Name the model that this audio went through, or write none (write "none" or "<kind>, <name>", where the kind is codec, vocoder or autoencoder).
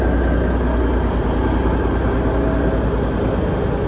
none